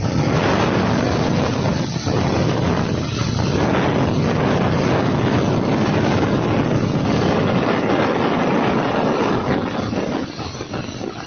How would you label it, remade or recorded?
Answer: recorded